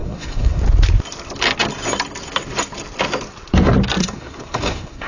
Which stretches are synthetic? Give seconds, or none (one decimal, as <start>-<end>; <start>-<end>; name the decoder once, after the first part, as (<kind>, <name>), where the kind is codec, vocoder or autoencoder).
0.0-0.6 (codec, SNAC); 4.0-5.1

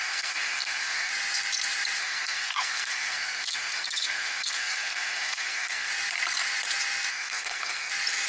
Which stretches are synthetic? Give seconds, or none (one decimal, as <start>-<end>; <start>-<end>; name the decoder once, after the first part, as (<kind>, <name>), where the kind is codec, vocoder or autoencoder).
0.0-1.1 (codec, SNAC); 2.0-5.9; 7.1-7.9

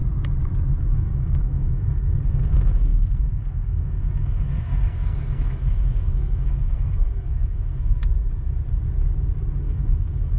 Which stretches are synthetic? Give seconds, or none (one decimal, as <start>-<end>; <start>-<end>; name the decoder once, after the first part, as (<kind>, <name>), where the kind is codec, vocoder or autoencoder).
0.8-8.0 (codec, SNAC); 9.6-10.4

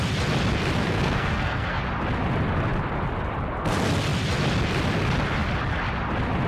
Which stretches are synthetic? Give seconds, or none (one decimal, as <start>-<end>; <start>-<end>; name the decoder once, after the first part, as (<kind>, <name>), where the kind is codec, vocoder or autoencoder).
0.8-1.8 (codec, SNAC)